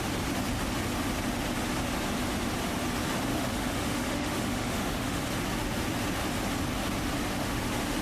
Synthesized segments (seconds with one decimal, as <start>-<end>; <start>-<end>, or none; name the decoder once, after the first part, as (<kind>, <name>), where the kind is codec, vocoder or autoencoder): 3.3-5.2 (autoencoder, DAC-VAE); 7.3-8.0